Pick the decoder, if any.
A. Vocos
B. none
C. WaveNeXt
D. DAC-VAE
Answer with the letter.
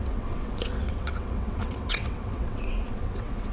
C